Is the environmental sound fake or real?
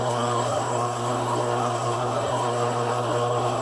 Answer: fake